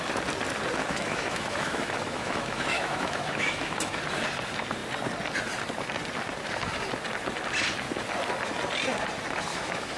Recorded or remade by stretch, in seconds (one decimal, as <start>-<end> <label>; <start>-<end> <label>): 0.0-0.8 recorded; 0.8-4.0 remade; 4.0-9.5 recorded; 9.5-10.0 remade